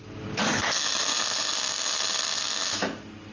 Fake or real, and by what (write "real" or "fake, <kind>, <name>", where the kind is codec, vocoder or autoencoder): real